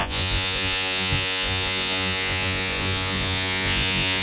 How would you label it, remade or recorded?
remade